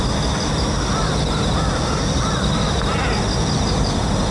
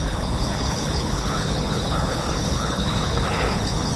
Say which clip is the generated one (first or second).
second